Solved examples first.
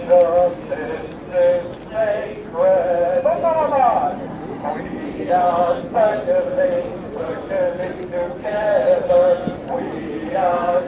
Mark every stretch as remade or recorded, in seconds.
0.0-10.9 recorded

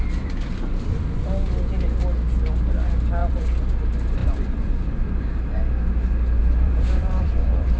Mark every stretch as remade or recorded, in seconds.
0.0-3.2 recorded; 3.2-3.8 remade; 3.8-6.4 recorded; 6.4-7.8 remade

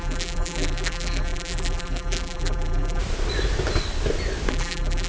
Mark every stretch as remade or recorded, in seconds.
0.0-3.0 remade; 3.0-4.5 recorded; 4.5-5.1 remade

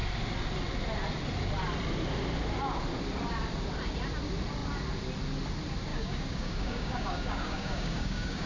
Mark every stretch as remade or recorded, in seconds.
0.0-5.9 recorded; 5.9-8.5 remade